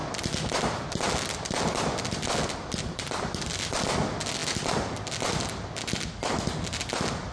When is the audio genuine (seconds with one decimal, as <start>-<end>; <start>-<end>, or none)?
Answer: 0.0-7.3